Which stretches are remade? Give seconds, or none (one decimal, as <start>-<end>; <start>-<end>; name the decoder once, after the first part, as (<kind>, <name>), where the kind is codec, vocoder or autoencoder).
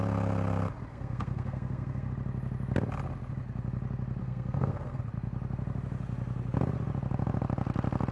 0.9-2.1 (codec, SNAC); 4.2-5.0